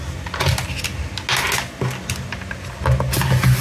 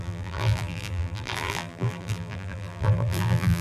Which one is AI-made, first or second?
second